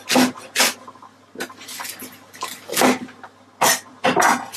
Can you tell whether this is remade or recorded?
recorded